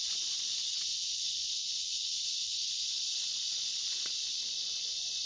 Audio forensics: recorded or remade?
remade